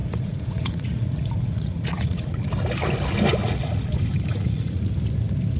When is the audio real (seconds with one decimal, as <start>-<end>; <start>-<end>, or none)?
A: 2.4-3.4; 3.9-4.3; 4.8-5.6